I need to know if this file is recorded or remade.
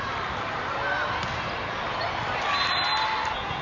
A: recorded